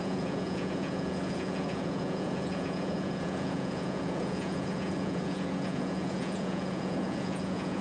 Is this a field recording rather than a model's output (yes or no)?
no